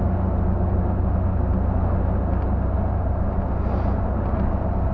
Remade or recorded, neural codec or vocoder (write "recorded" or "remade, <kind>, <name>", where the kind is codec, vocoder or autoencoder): recorded